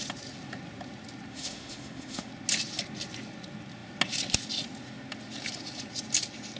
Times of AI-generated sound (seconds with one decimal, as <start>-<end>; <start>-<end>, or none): 1.3-2.3